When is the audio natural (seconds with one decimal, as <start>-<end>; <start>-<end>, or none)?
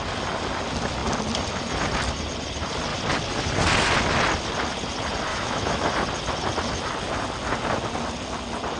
0.0-5.3; 5.9-8.8